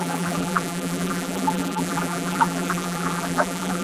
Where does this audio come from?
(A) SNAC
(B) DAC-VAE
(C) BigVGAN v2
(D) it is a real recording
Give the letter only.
C